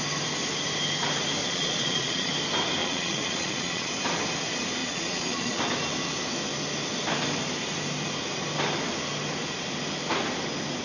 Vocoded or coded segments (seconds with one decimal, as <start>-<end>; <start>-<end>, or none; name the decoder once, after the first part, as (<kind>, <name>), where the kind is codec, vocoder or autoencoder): 1.4-2.3 (vocoder, Vocos); 2.8-3.9; 4.8-5.6